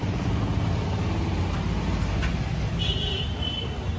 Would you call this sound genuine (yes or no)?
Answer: yes